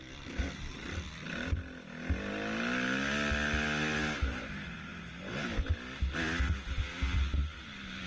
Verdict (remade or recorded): recorded